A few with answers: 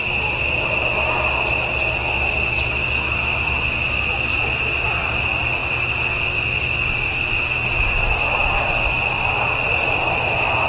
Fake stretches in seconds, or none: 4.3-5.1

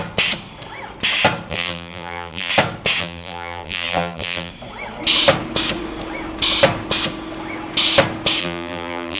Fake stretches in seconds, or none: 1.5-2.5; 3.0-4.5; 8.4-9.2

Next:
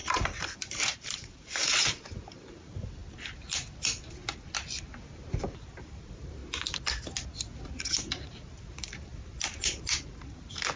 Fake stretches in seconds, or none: 0.0-3.0; 5.8-6.4; 8.2-10.8

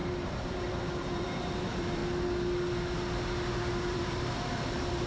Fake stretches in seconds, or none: 0.0-2.0; 3.8-5.1

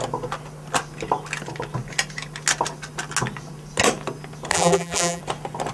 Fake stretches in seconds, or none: 4.5-5.2

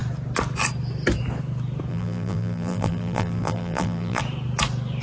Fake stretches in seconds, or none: 1.9-4.2